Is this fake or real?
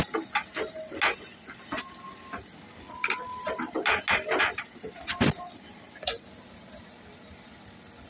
real